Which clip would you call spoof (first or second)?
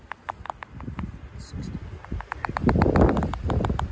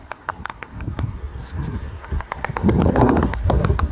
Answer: second